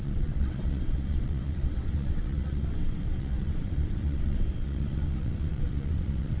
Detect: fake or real fake